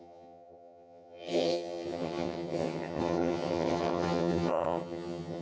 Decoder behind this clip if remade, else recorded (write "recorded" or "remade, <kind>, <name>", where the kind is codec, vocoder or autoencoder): remade, vocoder, HiFi-GAN